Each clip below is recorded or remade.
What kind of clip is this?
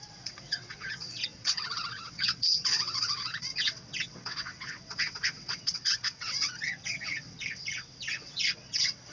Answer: remade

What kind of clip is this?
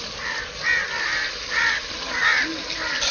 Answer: recorded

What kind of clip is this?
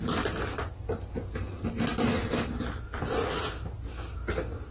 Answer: recorded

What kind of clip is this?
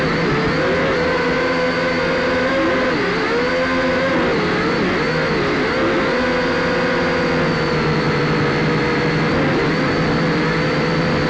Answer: recorded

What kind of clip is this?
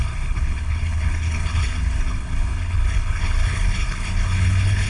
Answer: remade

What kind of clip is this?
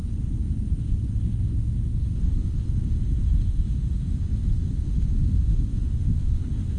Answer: remade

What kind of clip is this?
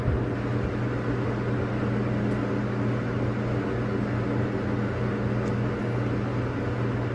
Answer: recorded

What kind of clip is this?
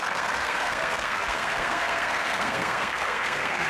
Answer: remade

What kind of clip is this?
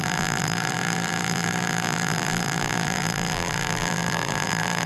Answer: remade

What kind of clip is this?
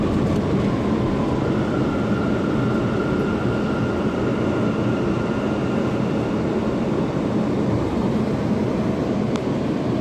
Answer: recorded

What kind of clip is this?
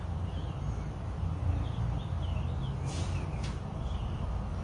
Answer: recorded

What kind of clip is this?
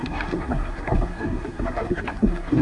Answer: remade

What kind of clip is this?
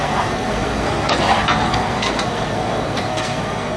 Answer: remade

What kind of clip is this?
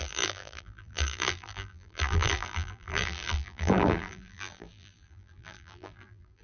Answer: remade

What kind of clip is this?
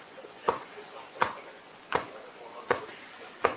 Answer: remade